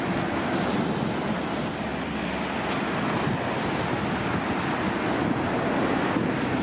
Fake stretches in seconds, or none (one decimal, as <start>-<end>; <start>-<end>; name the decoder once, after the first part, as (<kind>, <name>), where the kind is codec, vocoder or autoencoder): none